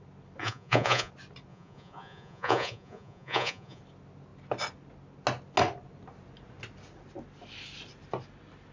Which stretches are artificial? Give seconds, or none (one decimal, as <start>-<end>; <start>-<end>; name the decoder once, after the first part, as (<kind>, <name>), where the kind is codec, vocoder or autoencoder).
0.4-1.1 (vocoder, Vocos); 1.5-3.8